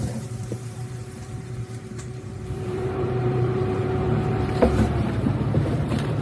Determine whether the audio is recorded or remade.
remade